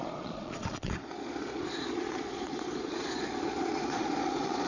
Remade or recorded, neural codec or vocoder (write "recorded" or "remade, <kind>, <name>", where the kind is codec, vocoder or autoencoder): remade, vocoder, Vocos